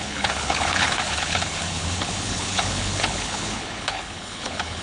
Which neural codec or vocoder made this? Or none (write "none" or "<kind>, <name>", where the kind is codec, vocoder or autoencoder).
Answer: codec, HILCodec